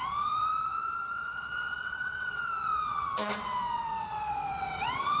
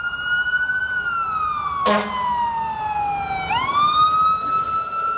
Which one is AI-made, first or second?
first